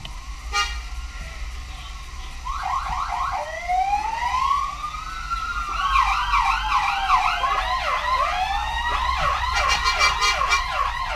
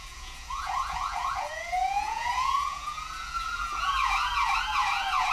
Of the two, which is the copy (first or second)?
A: second